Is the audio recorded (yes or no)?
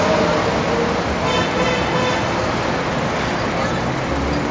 yes